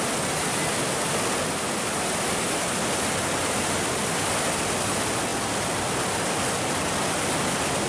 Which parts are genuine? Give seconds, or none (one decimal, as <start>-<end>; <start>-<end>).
0.0-7.9